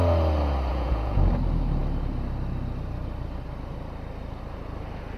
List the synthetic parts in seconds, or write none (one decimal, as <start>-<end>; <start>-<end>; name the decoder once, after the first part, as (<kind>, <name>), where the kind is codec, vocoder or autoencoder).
0.7-1.2 (vocoder, Vocos)